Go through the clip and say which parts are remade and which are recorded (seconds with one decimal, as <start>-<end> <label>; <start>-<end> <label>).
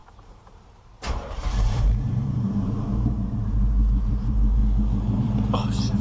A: 0.0-4.6 remade; 4.6-5.2 recorded; 5.2-6.0 remade